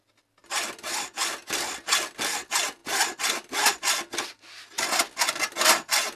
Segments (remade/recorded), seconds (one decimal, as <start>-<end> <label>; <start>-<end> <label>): 0.0-2.8 recorded; 2.8-4.1 remade; 4.1-6.2 recorded